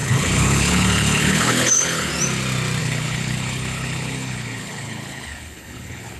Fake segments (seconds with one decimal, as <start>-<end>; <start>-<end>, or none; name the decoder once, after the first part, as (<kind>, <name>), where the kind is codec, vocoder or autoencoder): 0.0-2.1 (codec, HILCodec); 2.8-6.2